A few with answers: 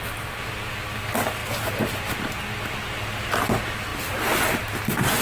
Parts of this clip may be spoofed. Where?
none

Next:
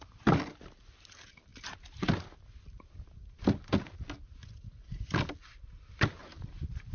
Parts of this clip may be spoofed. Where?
none

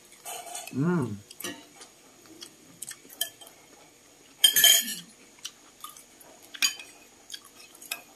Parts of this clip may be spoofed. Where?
0.0-4.9 (vocoder, BigVGAN v2); 7.6-8.2

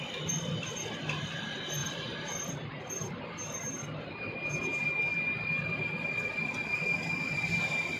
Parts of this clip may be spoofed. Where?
1.8-2.5 (vocoder, BigVGAN v2)

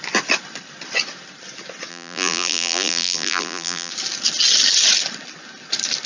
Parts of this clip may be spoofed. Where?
1.9-3.9 (vocoder, BigVGAN v2)

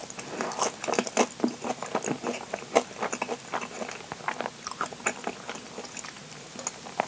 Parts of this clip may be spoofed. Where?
none

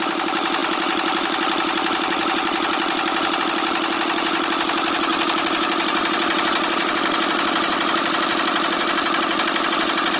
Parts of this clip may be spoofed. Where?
5.1-10.2 (vocoder, BigVGAN v2)